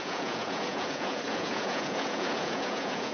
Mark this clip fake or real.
fake